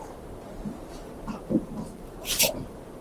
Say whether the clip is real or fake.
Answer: fake